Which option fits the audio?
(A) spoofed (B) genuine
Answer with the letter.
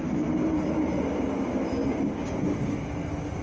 B